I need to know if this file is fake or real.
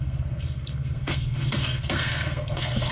fake